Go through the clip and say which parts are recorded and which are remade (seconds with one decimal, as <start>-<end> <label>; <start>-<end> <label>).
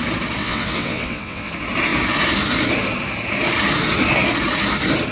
0.0-0.4 recorded; 0.4-1.5 remade; 1.5-5.1 recorded